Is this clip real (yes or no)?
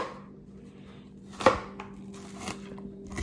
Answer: yes